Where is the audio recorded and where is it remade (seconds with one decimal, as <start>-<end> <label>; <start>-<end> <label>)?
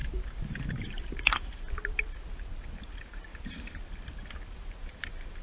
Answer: 0.0-1.2 remade; 1.2-3.3 recorded; 3.3-3.8 remade; 3.8-5.4 recorded